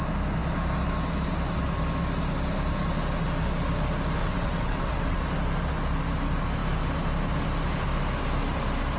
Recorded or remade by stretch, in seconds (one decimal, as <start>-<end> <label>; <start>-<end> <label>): 0.0-4.2 recorded; 4.2-5.2 remade; 5.2-9.0 recorded